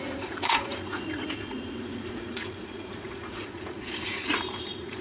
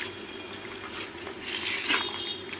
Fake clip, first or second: first